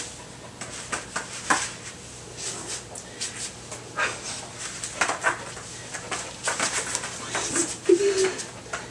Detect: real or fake real